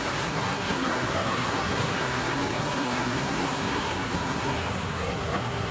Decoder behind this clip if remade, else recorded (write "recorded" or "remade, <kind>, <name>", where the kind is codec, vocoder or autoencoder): remade, codec, SNAC